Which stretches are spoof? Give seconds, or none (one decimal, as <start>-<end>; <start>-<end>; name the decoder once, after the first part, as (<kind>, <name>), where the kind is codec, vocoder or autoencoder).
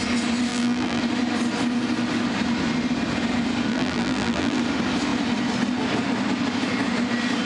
0.5-1.0 (vocoder, BigVGAN v2); 3.7-4.6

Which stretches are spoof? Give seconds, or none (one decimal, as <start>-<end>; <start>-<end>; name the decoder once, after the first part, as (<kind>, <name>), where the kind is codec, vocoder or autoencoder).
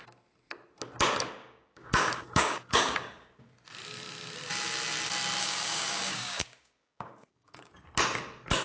1.4-3.5 (codec, DAC); 5.4-7.7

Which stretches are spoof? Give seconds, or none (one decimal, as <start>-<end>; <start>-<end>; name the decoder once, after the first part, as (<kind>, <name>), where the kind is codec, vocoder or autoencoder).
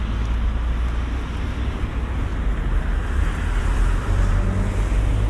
2.3-3.2 (vocoder, BigVGAN v2); 3.6-4.3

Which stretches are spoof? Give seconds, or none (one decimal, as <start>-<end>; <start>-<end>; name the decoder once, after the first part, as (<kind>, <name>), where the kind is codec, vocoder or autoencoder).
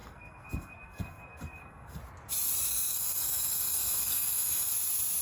0.0-2.0 (codec, SNAC); 2.7-4.7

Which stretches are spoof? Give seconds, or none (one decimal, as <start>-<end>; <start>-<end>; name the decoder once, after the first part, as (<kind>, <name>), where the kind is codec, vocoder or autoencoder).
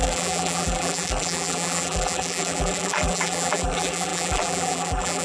0.0-5.2 (vocoder, BigVGAN v2)